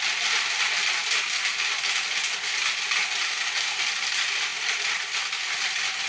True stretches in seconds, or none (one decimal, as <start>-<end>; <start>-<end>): 1.0-3.7